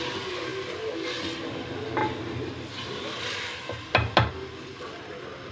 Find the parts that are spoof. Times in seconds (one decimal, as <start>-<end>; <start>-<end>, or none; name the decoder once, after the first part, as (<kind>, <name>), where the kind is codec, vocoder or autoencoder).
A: none